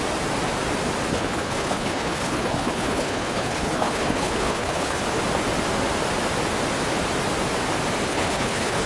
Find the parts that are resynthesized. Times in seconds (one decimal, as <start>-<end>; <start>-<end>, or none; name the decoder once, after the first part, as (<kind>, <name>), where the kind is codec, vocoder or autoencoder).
1.1-5.0 (codec, HILCodec); 8.1-8.9